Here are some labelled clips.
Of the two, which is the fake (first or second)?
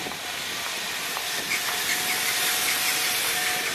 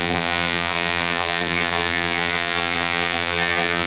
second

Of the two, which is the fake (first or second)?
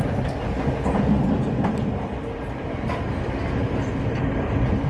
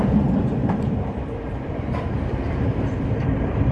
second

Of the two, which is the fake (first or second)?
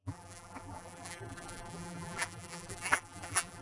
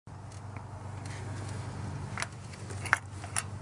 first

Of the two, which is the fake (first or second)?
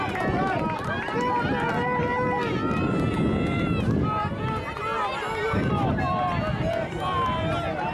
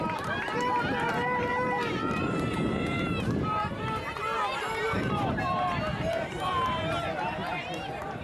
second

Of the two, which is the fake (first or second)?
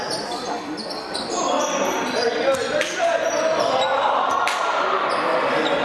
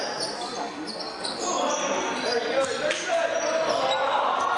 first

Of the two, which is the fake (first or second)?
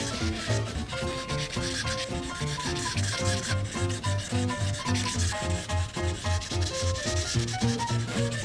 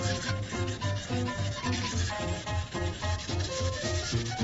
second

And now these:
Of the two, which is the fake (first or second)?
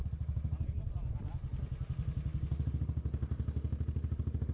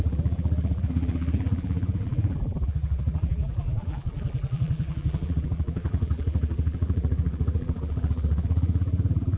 second